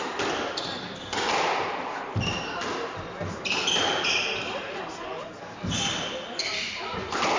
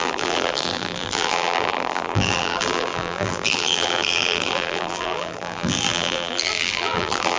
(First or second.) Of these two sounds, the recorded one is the first